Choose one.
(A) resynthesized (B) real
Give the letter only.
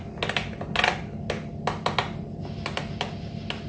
B